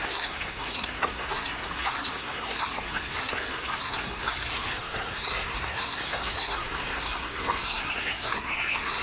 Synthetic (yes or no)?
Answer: yes